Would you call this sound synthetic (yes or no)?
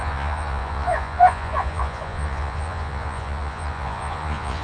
yes